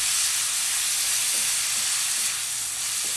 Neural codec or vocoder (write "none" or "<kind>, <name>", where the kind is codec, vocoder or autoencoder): none